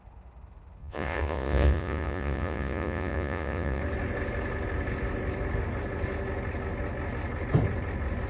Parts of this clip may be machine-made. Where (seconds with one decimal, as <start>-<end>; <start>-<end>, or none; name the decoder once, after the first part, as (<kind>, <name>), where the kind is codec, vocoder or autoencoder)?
0.8-3.8 (vocoder, Vocos)